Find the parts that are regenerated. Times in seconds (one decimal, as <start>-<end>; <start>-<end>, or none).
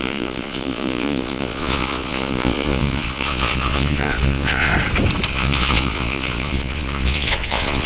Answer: 0.0-4.7; 5.3-7.9